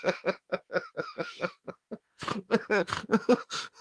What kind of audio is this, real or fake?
fake